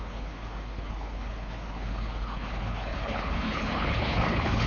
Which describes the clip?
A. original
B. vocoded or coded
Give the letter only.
B